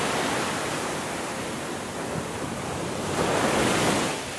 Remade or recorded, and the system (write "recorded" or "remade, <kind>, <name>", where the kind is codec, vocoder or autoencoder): remade, vocoder, BigVGAN v2